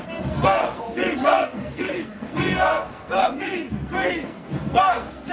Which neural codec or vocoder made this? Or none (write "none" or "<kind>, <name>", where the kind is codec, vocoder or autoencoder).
codec, SNAC